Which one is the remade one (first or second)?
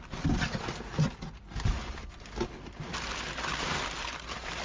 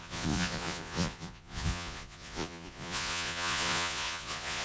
second